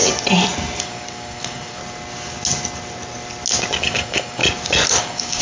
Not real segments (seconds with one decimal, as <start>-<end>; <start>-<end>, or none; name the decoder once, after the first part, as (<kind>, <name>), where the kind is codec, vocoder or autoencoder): 0.8-1.8 (codec, DAC); 3.8-4.4; 5.0-5.4